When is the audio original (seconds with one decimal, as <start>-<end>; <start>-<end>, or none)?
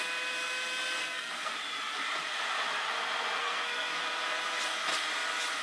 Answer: 0.0-1.0; 1.5-3.4; 4.0-5.6